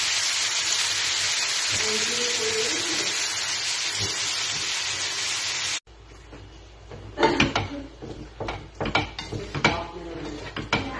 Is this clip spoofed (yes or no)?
no